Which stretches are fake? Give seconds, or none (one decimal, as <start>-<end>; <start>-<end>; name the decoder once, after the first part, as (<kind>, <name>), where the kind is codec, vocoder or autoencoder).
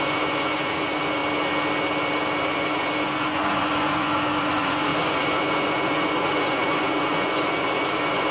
0.0-1.2 (vocoder, Vocos); 2.4-8.3